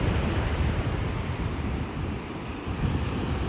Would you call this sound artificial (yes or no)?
no